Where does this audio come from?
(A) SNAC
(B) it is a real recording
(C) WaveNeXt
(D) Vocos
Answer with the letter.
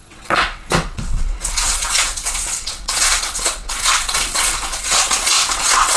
C